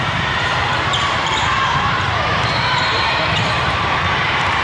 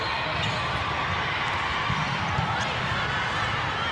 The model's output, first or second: first